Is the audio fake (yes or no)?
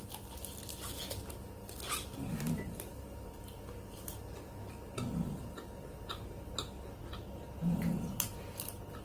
no